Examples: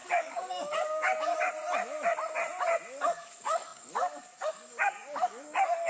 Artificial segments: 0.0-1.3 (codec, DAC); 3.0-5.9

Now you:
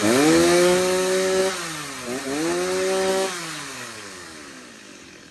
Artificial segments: 0.0-1.4 (codec, DAC); 3.1-5.3

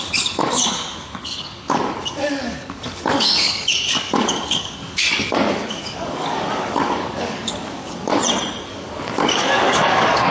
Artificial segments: 0.0-8.2 (codec, DAC); 8.7-10.3

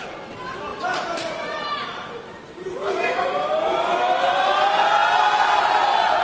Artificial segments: none

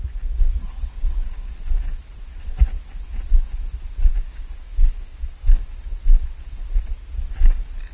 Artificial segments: 4.3-5.2 (codec, DAC)

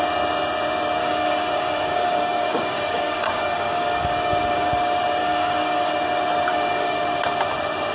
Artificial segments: 1.0-4.7 (codec, DAC); 5.2-5.9; 6.5-7.0